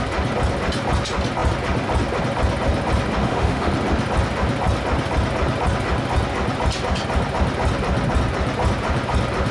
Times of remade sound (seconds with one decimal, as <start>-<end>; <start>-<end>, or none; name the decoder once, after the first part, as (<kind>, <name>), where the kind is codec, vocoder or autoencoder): 3.2-3.7 (autoencoder, DAC-VAE)